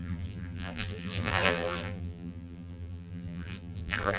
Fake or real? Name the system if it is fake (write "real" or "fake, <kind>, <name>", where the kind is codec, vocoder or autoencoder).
fake, vocoder, BigVGAN v2